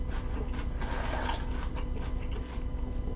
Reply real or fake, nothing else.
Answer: real